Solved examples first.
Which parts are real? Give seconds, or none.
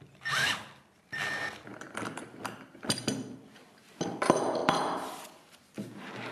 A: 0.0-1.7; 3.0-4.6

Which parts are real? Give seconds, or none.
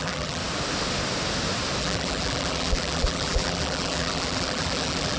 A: 0.4-1.8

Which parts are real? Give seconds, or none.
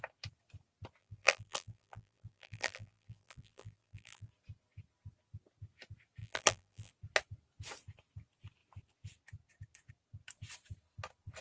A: 0.0-1.0; 4.3-6.2; 6.9-11.4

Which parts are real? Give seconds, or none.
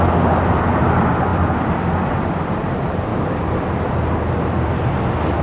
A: 0.0-1.3; 2.7-3.1; 3.9-5.4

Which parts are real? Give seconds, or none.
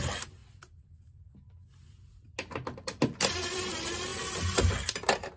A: 0.0-5.4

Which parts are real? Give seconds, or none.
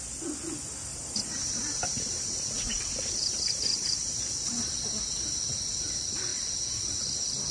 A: 0.0-0.9; 5.0-6.3; 6.8-7.5